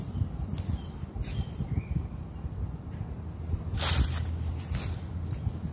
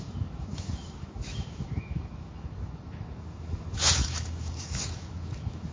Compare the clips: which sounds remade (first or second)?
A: second